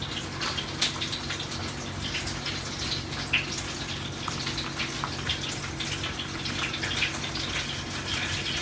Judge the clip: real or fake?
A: real